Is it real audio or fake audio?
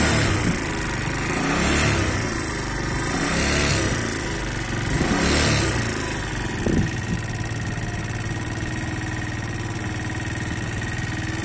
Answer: real